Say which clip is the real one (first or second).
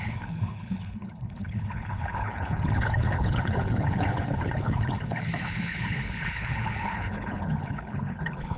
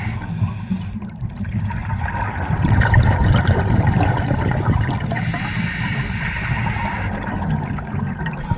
second